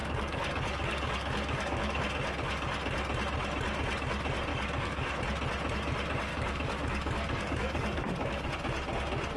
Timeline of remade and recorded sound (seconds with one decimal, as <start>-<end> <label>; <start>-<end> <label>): 0.0-2.0 remade; 2.0-4.5 recorded; 4.5-5.2 remade; 5.2-6.3 recorded; 6.3-8.5 remade; 8.5-9.4 recorded